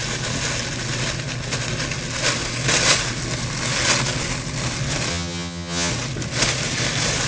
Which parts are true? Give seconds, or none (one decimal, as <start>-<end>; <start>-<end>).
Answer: 0.0-5.1; 5.9-7.3